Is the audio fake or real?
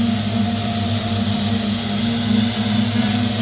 real